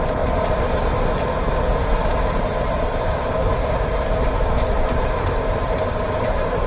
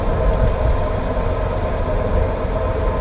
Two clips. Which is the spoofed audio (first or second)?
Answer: first